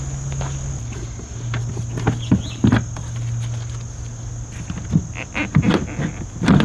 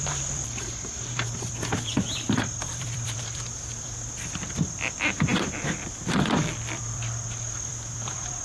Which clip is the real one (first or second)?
first